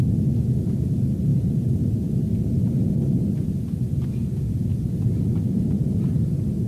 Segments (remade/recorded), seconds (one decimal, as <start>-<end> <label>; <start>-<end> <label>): 0.0-6.7 recorded